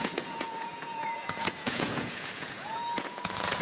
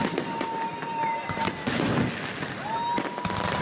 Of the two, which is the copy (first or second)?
first